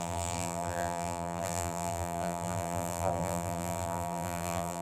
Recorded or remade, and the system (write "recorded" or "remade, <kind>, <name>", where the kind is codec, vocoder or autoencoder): remade, vocoder, BigVGAN v2